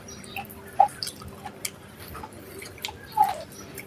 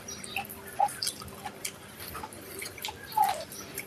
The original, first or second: first